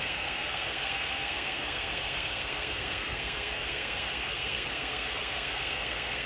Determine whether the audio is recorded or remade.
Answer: remade